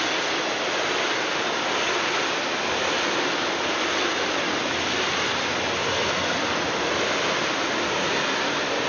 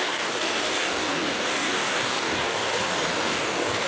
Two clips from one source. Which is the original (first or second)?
first